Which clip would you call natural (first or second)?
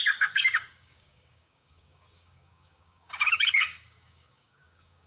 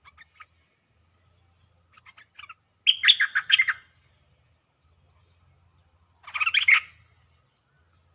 second